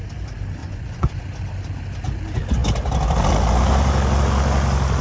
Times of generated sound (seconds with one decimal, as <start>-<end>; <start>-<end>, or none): 0.6-1.2